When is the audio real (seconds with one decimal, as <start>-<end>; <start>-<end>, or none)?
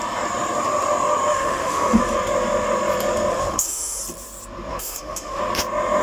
0.0-1.3; 2.0-3.3; 4.0-4.7; 5.4-6.0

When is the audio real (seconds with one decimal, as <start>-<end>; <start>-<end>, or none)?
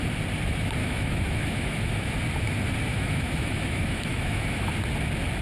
0.0-0.8; 2.1-2.9; 4.7-5.4